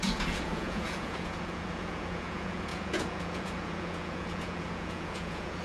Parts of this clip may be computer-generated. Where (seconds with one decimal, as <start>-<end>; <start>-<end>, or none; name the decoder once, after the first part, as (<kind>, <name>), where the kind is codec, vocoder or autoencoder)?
0.0-5.6 (vocoder, Vocos)